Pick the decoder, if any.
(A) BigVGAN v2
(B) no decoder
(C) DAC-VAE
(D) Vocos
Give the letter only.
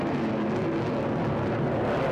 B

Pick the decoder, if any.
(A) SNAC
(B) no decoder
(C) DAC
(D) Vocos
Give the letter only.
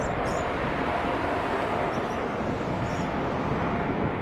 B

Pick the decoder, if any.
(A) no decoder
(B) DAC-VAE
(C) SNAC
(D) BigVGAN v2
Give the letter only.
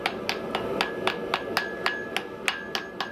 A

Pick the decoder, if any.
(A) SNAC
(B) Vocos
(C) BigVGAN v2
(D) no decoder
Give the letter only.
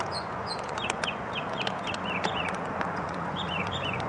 B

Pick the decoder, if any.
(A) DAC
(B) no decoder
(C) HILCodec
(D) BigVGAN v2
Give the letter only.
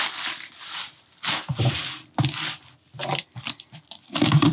D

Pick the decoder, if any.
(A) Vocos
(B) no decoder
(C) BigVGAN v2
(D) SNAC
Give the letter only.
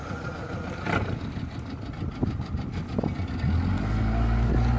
B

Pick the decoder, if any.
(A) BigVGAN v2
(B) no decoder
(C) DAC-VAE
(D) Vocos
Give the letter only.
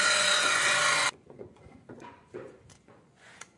D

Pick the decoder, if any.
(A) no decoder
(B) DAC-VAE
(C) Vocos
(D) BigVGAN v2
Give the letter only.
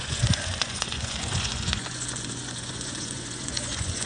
C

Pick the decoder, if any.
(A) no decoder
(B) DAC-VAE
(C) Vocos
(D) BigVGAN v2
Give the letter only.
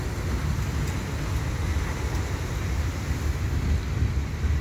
A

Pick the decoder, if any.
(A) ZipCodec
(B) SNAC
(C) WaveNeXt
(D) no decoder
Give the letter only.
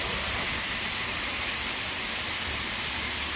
D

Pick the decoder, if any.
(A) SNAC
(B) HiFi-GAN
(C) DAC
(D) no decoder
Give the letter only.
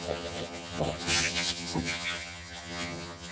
B